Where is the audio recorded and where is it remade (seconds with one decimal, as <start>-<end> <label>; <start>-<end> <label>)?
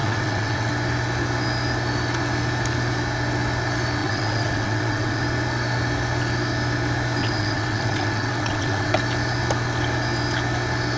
0.0-0.7 remade; 0.7-4.0 recorded; 4.0-5.2 remade; 5.2-7.2 recorded; 7.2-9.0 remade; 9.0-11.0 recorded